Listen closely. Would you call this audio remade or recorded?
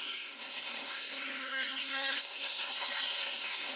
remade